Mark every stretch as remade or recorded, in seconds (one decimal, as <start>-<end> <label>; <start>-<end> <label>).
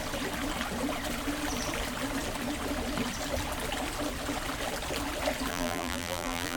0.0-5.5 recorded; 5.5-6.6 remade